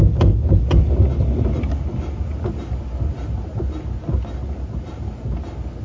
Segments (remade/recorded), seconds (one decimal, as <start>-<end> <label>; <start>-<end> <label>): 0.0-5.8 recorded